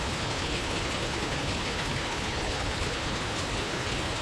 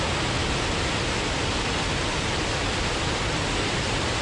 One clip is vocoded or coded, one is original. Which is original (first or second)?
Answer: second